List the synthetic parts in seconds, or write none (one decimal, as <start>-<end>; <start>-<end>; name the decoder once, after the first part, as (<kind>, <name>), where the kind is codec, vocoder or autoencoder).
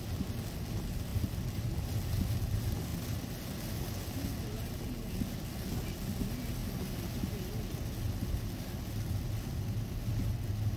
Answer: none